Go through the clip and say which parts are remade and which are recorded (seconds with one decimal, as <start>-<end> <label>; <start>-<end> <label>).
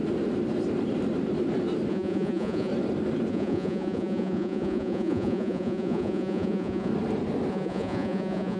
0.0-1.9 recorded; 1.9-2.7 remade; 2.7-3.3 recorded; 3.3-6.9 remade; 6.9-7.5 recorded; 7.5-8.6 remade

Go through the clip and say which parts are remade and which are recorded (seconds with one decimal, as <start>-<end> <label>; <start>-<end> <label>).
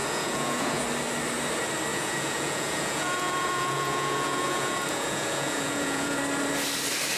0.0-0.8 remade; 0.8-1.9 recorded; 1.9-6.2 remade; 6.2-7.2 recorded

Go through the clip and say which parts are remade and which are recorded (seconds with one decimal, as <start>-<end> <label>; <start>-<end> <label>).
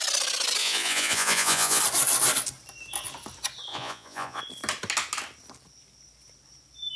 0.0-0.6 recorded; 0.6-1.8 remade; 1.8-3.7 recorded; 3.7-4.4 remade; 4.4-7.0 recorded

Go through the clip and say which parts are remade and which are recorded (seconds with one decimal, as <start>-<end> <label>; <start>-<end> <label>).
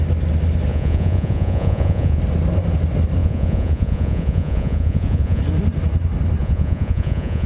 0.0-0.7 recorded; 0.7-2.2 remade; 2.2-3.2 recorded; 3.2-5.4 remade; 5.4-6.4 recorded; 6.4-7.5 remade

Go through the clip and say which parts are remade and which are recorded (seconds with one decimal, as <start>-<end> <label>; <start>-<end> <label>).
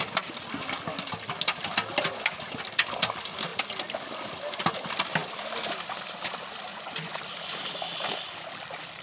0.0-6.7 recorded; 6.7-7.2 remade; 7.2-9.0 recorded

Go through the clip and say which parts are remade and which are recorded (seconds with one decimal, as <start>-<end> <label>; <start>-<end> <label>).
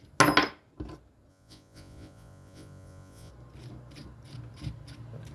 0.0-1.3 recorded; 1.3-3.3 remade; 3.3-5.3 recorded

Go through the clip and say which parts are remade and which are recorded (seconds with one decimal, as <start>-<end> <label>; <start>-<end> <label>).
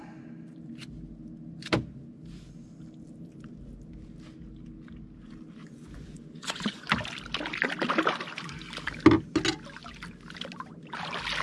0.0-5.6 recorded; 5.6-6.9 remade; 6.9-11.4 recorded